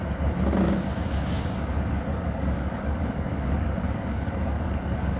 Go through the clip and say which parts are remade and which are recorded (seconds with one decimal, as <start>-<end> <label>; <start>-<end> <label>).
0.0-2.1 recorded; 2.1-5.2 remade